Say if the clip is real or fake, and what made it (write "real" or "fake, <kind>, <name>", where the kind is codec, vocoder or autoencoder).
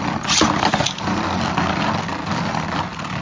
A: real